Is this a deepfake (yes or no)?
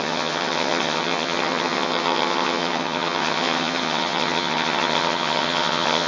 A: yes